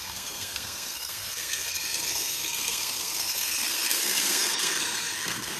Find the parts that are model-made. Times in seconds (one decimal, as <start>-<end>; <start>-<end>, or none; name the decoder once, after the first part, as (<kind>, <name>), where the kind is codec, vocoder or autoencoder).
0.0-5.6 (codec, SNAC)